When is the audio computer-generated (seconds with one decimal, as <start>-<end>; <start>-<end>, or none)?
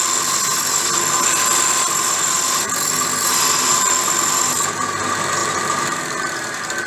5.4-6.9